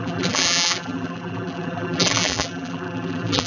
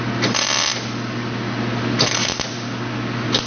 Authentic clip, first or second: second